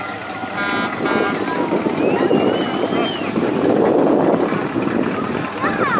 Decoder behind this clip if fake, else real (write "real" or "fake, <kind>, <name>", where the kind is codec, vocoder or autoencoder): real